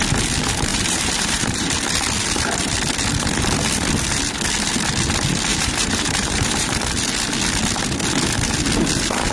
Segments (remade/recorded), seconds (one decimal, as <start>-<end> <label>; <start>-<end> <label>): 0.0-0.7 recorded; 0.7-1.7 remade; 1.7-5.5 recorded; 5.5-6.8 remade; 6.8-9.3 recorded